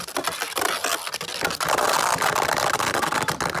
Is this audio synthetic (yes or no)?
no